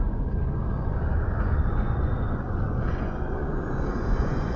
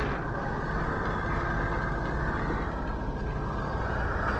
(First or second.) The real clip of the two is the second